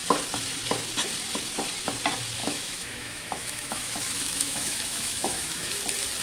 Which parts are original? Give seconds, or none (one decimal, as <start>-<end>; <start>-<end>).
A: 0.0-2.4; 5.8-6.2